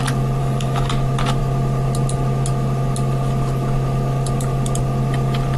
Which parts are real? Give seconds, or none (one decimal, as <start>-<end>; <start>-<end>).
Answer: 0.0-0.4; 0.9-5.6

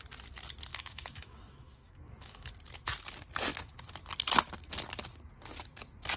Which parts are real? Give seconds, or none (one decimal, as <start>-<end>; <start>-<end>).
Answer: 0.0-0.7; 2.5-6.2

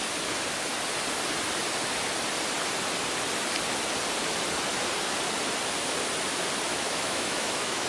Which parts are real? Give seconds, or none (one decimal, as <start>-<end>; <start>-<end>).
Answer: 0.0-6.7

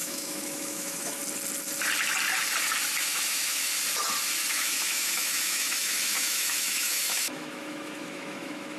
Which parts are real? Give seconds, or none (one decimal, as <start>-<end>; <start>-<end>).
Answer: 1.2-3.0; 3.7-4.5

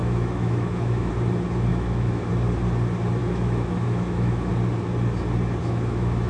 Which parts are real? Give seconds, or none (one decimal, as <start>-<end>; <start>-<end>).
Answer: 1.1-1.7; 2.3-3.2; 4.5-5.6